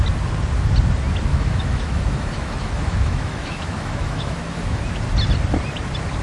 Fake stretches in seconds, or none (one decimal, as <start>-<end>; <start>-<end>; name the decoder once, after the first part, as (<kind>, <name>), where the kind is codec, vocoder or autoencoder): 1.3-4.8 (autoencoder, DAC-VAE)